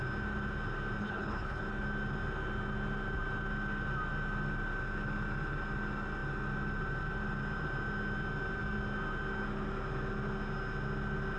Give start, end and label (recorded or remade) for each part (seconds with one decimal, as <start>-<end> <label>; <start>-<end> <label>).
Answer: 0.0-1.0 recorded; 1.0-1.6 remade; 1.6-11.4 recorded